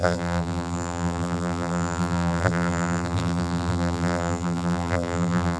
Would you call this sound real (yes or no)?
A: no